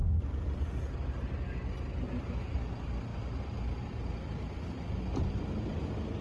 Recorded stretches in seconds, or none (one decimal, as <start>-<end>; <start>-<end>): 0.0-6.2